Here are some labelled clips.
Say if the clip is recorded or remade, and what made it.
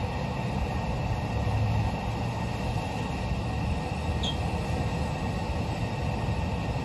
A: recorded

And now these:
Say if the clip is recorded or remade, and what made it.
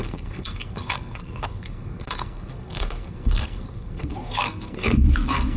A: remade, codec, SNAC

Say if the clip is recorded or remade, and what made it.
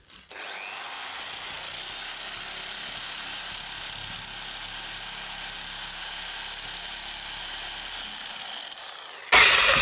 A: recorded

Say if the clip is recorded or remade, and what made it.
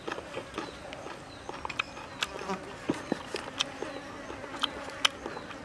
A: recorded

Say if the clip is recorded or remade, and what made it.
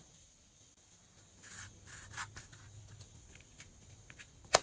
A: recorded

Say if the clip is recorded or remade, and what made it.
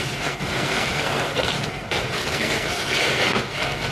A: remade, codec, SNAC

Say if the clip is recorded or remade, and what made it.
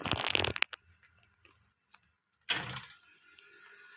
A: recorded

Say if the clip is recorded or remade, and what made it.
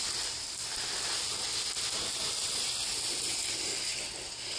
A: recorded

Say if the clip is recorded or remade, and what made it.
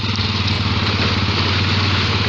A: recorded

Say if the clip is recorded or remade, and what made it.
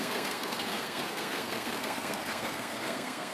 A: remade, codec, SNAC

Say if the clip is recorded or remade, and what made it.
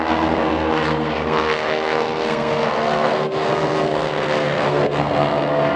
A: remade, codec, SNAC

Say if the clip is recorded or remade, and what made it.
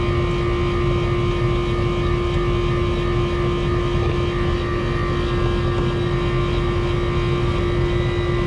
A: recorded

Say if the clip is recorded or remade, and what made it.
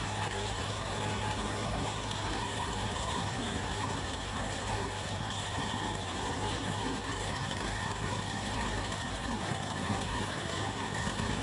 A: remade, codec, SNAC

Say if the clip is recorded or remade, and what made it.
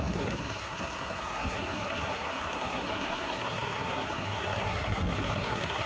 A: remade, codec, SNAC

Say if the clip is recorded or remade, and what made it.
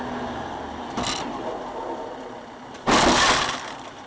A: recorded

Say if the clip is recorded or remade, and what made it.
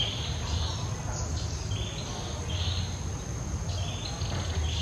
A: recorded